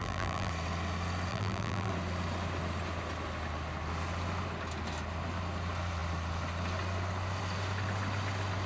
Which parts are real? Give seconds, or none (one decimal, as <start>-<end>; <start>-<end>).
0.5-1.3; 1.9-8.7